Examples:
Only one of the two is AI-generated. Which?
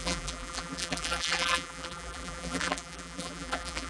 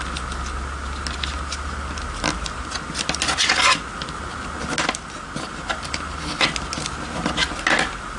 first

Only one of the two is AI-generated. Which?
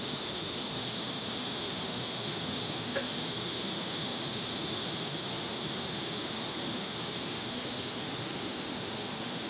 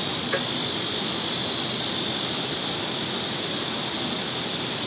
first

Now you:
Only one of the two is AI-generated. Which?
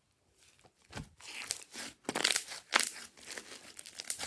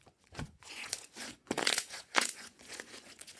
second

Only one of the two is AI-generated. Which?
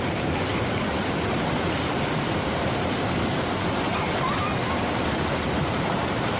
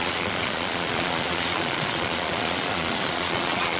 second